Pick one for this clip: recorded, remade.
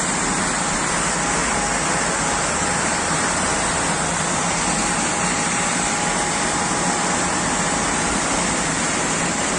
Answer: recorded